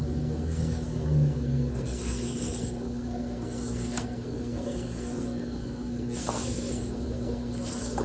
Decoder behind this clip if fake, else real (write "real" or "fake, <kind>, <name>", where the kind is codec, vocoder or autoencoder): fake, codec, SNAC